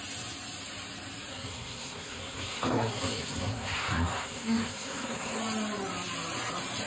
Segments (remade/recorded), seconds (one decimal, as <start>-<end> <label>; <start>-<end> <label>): 0.0-1.3 recorded; 1.3-5.4 remade; 5.4-6.9 recorded